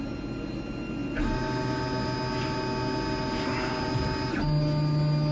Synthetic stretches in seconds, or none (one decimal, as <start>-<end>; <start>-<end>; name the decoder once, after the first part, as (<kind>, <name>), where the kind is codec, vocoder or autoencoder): none